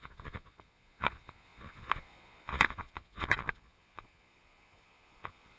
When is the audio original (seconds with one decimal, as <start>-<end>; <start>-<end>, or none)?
none